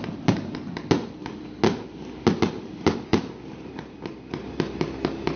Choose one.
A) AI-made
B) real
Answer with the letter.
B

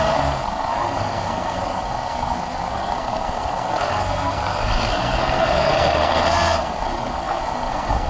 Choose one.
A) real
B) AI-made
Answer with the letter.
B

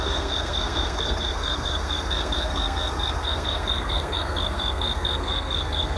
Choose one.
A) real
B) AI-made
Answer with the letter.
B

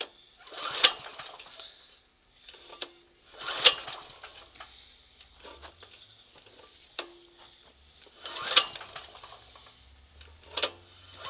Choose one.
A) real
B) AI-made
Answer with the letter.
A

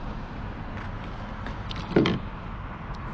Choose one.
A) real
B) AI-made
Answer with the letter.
A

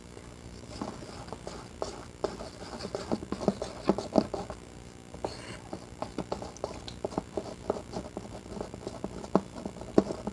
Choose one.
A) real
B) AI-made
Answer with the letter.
A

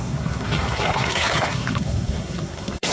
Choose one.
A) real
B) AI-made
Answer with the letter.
B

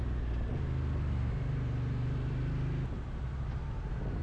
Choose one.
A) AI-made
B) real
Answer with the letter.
B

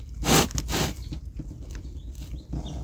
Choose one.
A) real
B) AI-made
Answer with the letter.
A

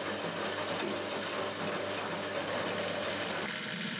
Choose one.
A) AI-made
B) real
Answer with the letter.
B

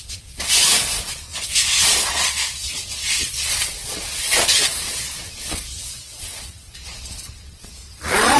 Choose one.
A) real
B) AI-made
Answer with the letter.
B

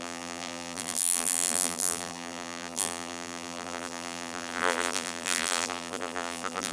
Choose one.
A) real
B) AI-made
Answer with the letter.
B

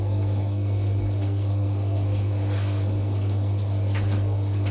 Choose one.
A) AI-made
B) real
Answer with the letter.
A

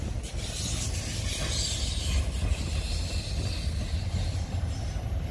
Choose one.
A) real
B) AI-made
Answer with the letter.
A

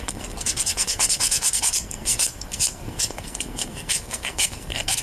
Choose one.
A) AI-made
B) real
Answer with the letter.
A